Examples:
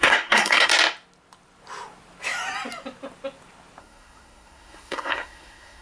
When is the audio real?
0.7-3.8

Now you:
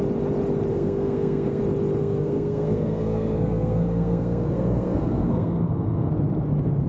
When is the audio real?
0.0-0.7; 1.6-2.0; 6.1-6.9

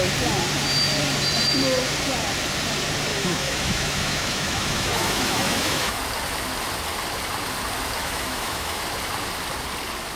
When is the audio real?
0.0-3.1; 6.0-8.0; 8.8-10.2

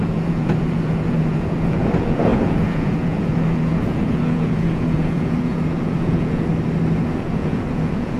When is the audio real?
6.5-7.1

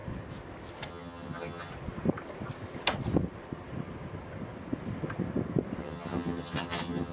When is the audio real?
0.0-0.9; 1.7-5.8

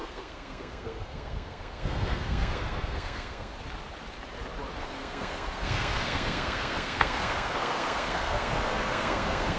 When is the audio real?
3.5-4.8